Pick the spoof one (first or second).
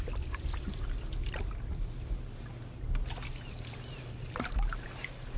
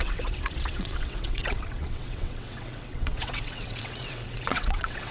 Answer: second